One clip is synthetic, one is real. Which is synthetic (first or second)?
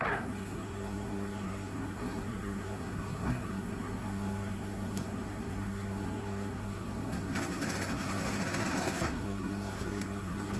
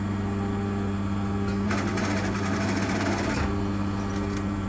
first